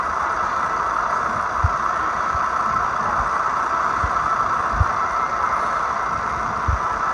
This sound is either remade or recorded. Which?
recorded